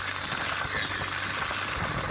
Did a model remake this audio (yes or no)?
no